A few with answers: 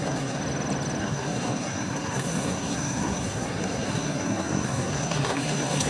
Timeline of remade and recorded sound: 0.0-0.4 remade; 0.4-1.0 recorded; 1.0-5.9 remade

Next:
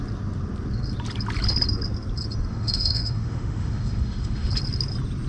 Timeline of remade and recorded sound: 0.0-2.5 recorded; 2.5-4.5 remade; 4.5-5.3 recorded

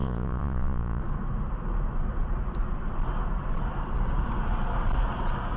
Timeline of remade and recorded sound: 0.0-1.0 remade; 1.0-5.6 recorded

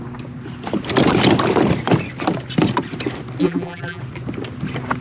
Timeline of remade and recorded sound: 0.0-3.4 recorded; 3.4-4.0 remade; 4.0-5.0 recorded

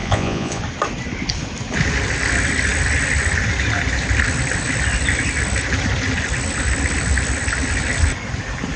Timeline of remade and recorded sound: 0.0-0.6 remade; 0.6-8.8 recorded

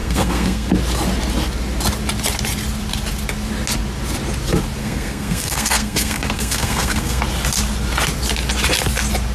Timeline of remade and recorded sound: 0.0-0.7 remade; 0.7-4.8 recorded; 4.8-7.2 remade; 7.2-9.3 recorded

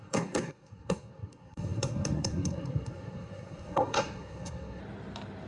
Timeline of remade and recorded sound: 0.0-4.8 remade; 4.8-5.5 recorded